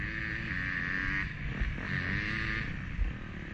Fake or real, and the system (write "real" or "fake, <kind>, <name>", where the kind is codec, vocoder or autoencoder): real